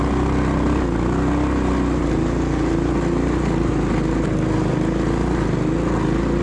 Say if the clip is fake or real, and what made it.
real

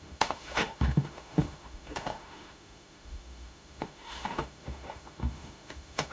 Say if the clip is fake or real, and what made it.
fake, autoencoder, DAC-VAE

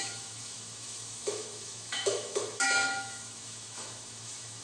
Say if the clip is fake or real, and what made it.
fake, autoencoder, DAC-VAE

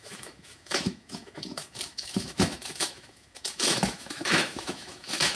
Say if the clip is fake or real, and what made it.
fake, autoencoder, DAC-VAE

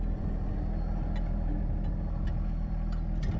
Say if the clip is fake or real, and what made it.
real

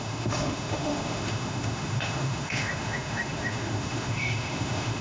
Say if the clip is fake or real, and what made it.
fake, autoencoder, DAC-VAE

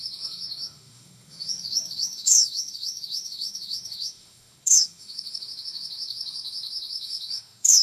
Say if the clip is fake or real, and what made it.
fake, autoencoder, DAC-VAE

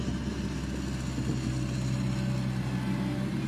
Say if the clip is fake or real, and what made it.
real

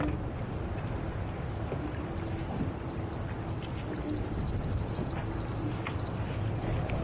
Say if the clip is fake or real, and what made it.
real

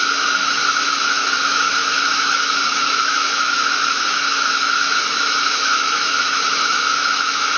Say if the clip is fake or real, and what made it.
fake, autoencoder, DAC-VAE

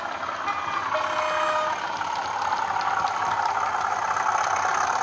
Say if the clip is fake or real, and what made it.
real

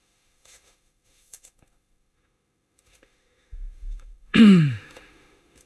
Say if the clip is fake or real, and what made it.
fake, autoencoder, DAC-VAE